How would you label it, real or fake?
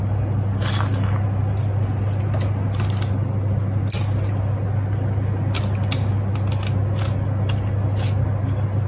real